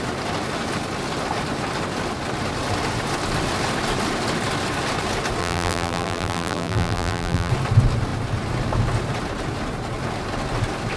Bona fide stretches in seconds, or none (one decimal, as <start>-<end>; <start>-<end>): 0.0-5.4; 7.5-11.0